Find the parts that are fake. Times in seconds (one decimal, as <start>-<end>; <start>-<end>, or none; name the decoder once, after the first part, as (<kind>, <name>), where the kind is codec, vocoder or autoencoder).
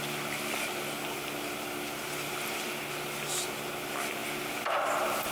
none